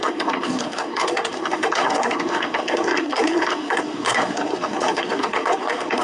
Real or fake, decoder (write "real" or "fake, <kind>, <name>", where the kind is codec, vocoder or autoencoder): fake, codec, SNAC